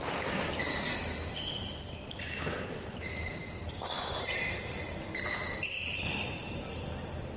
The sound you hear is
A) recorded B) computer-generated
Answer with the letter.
A